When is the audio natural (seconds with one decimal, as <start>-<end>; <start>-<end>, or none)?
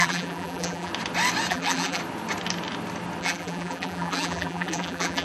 0.9-1.5; 2.0-3.2